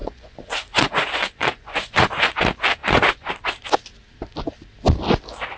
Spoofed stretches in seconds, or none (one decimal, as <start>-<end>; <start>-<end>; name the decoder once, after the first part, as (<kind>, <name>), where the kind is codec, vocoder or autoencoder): 0.0-2.3 (vocoder, Vocos); 2.8-3.3